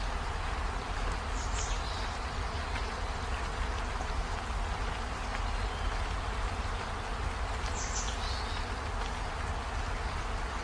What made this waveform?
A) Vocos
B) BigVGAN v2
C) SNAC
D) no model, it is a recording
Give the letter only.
D